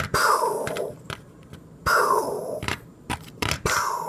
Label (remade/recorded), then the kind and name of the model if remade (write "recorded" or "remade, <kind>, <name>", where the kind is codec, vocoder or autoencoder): remade, vocoder, BigVGAN v2